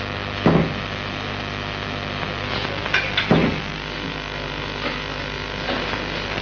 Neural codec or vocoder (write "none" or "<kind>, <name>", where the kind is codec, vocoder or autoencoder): none